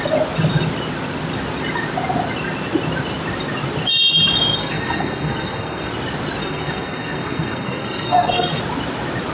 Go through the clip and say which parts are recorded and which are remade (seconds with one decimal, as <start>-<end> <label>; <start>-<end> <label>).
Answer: 0.0-4.6 recorded; 4.6-5.9 remade; 5.9-6.4 recorded; 6.4-8.6 remade; 8.6-9.3 recorded